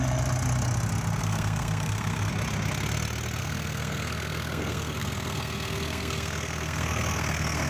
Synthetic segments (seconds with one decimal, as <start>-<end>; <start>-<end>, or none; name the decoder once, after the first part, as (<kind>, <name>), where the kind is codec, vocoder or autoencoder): 1.2-2.3 (codec, SNAC); 3.4-7.7